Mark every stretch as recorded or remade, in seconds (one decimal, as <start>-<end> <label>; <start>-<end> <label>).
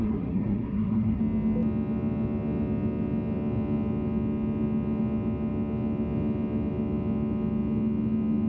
0.0-1.2 remade; 1.2-8.5 recorded